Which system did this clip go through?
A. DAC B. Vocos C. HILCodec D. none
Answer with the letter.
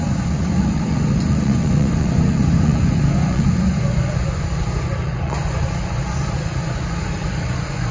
B